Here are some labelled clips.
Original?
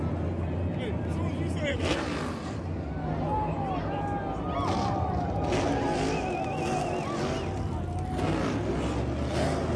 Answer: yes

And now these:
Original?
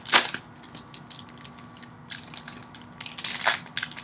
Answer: yes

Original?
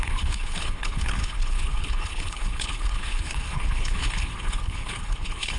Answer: no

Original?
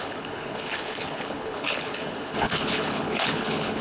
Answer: no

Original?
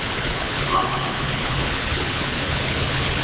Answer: no